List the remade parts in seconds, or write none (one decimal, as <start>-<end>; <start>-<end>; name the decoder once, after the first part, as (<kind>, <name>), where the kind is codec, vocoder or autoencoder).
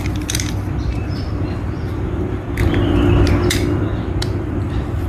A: 0.0-5.1 (vocoder, BigVGAN v2)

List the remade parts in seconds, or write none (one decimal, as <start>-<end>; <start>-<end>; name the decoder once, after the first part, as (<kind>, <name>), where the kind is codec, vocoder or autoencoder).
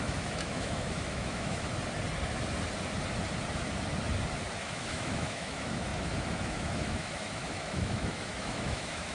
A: 0.0-1.7 (autoencoder, DAC-VAE); 4.6-9.1